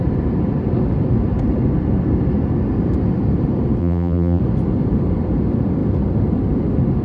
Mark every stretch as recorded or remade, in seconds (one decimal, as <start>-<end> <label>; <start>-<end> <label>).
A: 0.0-3.8 recorded; 3.8-4.4 remade; 4.4-7.0 recorded